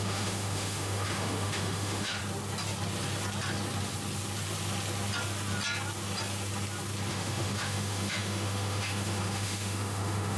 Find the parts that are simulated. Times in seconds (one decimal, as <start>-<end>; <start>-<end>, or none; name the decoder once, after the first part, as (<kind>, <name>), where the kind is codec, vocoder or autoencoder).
0.0-2.2 (autoencoder, DAC-VAE); 7.1-10.4